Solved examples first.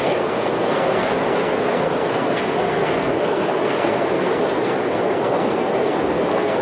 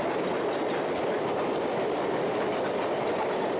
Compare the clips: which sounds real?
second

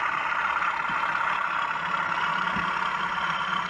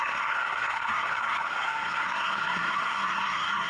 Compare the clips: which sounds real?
first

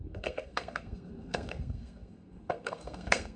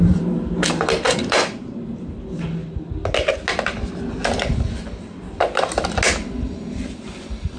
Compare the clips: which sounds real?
second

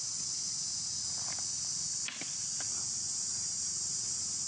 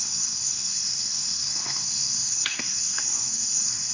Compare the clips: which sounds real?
first